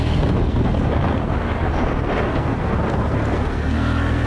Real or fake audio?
fake